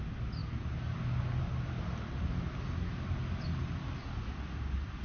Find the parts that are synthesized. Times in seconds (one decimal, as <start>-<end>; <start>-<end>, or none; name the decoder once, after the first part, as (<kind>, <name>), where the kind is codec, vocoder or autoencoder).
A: none